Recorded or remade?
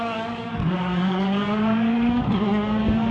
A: remade